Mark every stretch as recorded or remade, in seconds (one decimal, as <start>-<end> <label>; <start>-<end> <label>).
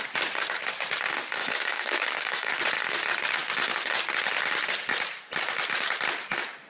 0.0-1.4 recorded; 1.4-2.6 remade; 2.6-6.7 recorded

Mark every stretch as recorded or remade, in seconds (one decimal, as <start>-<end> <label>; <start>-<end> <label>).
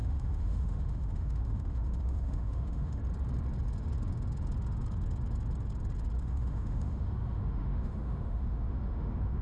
0.0-3.0 remade; 3.0-6.2 recorded; 6.2-9.4 remade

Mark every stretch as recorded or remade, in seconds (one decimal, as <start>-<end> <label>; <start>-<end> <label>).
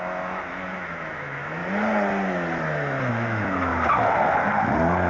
0.0-1.6 remade; 1.6-3.1 recorded; 3.1-3.7 remade; 3.7-5.1 recorded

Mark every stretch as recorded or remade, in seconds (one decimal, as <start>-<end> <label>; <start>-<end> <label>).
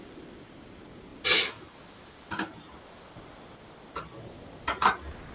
0.0-5.3 recorded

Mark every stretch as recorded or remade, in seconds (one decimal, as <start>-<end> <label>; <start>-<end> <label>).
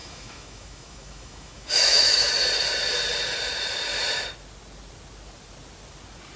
0.0-2.3 remade; 2.3-6.4 recorded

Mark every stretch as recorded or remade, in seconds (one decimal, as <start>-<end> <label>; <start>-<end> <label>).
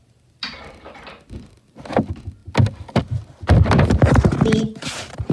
0.0-5.3 recorded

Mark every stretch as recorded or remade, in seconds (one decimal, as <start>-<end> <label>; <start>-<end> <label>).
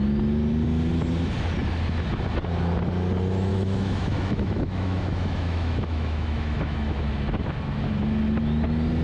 0.0-3.5 recorded; 3.5-7.1 remade; 7.1-9.0 recorded